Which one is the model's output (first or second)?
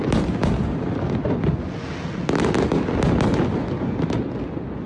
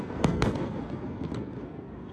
second